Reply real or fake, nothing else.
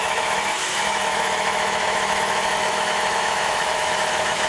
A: fake